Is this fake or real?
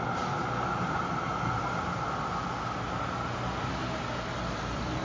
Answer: real